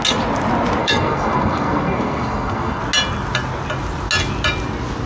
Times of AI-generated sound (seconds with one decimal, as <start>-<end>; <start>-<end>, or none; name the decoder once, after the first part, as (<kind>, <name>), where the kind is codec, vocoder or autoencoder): 0.8-2.8 (codec, SNAC)